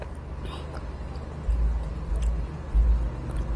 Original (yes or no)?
yes